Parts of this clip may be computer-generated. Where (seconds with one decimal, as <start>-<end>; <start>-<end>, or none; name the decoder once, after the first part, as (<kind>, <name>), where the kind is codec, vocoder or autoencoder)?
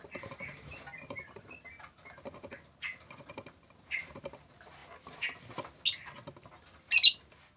none